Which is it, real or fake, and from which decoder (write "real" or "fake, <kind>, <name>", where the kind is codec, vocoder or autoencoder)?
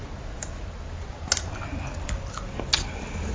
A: real